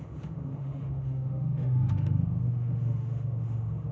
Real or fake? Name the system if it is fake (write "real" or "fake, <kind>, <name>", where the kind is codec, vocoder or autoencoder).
fake, autoencoder, DAC-VAE